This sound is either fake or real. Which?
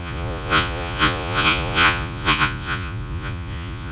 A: fake